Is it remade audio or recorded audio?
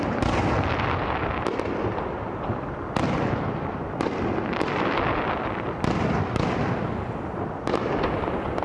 recorded